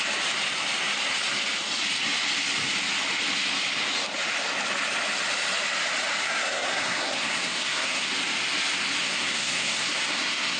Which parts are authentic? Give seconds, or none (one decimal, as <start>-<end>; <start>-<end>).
0.0-6.2; 8.1-9.0